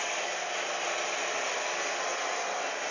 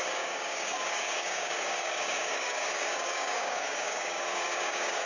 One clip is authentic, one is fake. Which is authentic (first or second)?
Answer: first